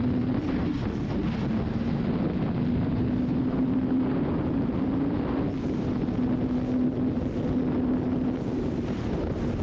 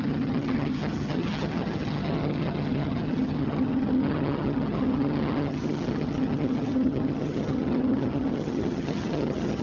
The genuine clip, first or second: first